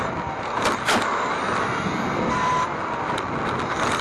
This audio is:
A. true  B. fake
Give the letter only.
A